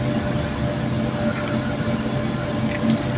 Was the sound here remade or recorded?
recorded